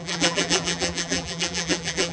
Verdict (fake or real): fake